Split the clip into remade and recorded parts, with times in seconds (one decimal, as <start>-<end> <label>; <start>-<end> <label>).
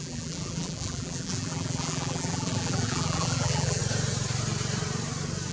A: 0.0-3.8 remade; 3.8-5.5 recorded